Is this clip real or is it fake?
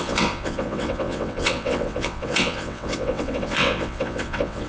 fake